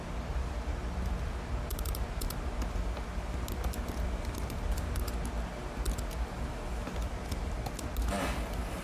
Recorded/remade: recorded